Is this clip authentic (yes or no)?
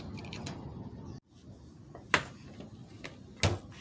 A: yes